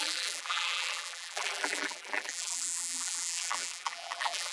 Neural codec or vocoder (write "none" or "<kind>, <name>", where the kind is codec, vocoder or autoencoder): vocoder, BigVGAN v2